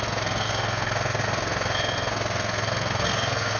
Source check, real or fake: fake